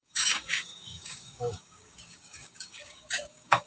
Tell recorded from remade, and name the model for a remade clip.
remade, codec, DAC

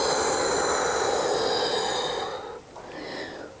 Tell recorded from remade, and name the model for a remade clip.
recorded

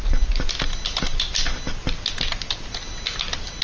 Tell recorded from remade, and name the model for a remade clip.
recorded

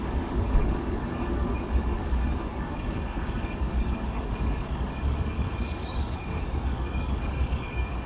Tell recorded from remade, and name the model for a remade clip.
remade, codec, DAC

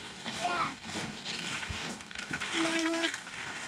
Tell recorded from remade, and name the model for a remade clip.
remade, codec, DAC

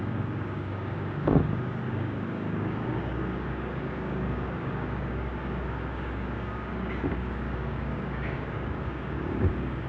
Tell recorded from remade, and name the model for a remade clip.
remade, codec, DAC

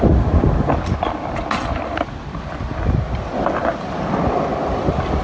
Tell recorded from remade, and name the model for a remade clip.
recorded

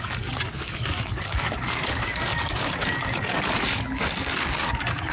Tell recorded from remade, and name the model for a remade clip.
remade, codec, DAC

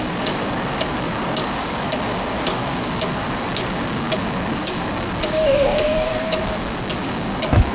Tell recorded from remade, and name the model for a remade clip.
remade, codec, DAC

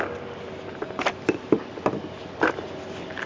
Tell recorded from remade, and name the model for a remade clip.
recorded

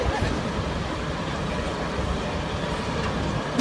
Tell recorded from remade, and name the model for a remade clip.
recorded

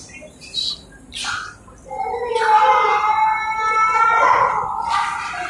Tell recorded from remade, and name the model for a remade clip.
recorded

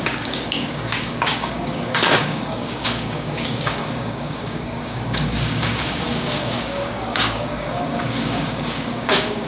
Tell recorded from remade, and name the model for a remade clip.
remade, codec, DAC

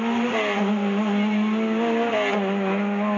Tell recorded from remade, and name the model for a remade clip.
recorded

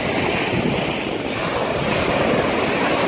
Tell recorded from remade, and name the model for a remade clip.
recorded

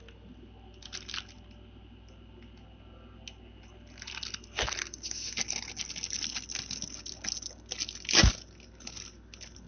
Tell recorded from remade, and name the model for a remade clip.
recorded